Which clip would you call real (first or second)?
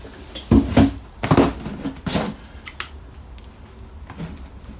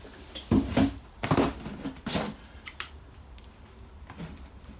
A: first